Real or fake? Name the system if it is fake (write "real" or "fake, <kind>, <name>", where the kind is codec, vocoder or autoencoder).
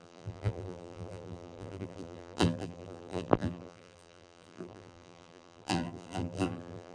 fake, vocoder, BigVGAN v2